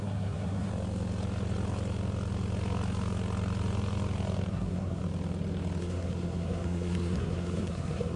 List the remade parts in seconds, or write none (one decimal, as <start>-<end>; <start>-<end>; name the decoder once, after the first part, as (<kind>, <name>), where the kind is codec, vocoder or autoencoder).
0.0-0.7 (codec, SNAC); 4.5-5.0; 5.8-8.2